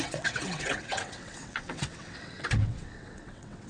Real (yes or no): no